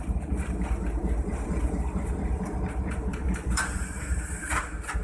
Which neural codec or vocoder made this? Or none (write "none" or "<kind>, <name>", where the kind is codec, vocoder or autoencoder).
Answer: vocoder, BigVGAN v2